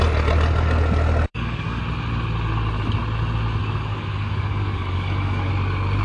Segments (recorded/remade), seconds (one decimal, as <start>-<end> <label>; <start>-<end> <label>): 0.0-1.3 recorded; 1.3-1.8 remade; 1.8-3.6 recorded; 3.6-5.5 remade; 5.5-6.0 recorded